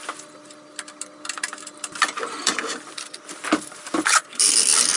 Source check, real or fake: real